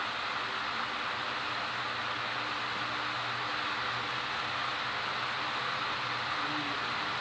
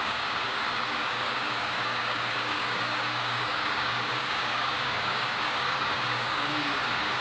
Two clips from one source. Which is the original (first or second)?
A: first